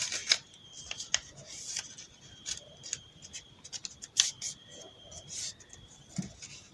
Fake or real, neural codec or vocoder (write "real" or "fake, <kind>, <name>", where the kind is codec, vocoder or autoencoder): real